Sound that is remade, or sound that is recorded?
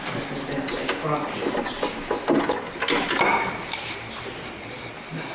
recorded